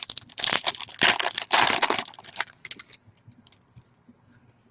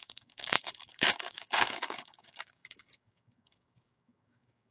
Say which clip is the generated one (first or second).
second